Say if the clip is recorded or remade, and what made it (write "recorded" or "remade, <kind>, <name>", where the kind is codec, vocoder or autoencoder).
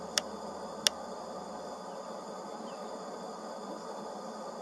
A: recorded